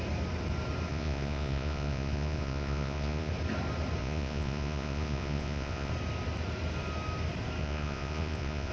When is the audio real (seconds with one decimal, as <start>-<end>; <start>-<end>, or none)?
0.0-0.9; 3.3-4.0; 5.9-7.6